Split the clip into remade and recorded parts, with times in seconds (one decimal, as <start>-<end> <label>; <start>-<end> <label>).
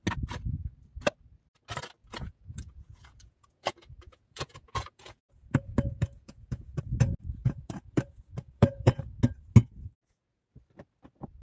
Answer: 0.0-2.0 recorded; 2.0-6.8 remade; 6.8-7.4 recorded; 7.4-9.0 remade; 9.0-9.6 recorded; 9.6-10.5 remade; 10.5-11.4 recorded